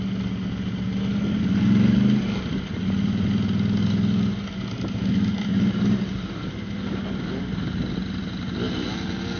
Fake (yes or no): no